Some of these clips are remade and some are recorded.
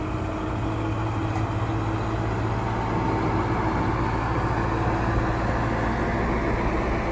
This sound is recorded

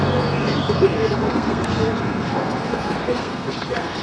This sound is remade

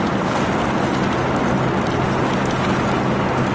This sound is recorded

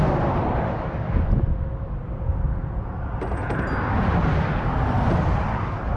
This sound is recorded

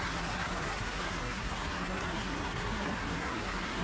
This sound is remade